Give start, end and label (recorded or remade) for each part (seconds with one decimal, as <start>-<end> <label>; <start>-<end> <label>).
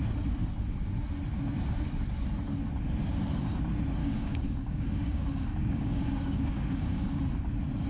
0.0-4.0 recorded; 4.0-7.2 remade; 7.2-7.9 recorded